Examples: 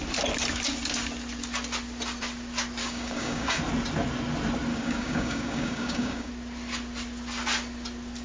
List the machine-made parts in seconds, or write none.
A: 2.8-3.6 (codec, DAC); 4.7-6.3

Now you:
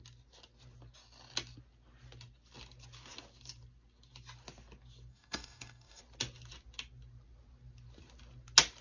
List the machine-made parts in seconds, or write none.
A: 5.1-6.0 (codec, DAC)

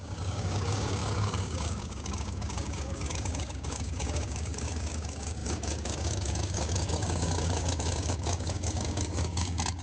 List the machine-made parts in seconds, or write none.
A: 0.0-9.8 (codec, DAC)